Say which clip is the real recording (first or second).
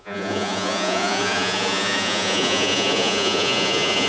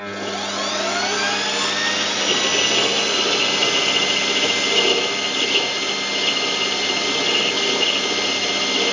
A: second